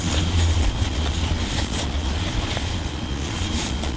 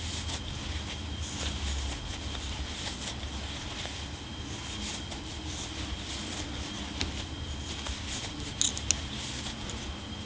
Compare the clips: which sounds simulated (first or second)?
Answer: first